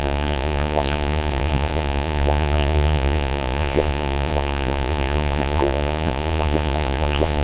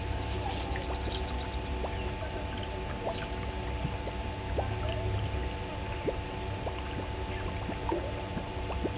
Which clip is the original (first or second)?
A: second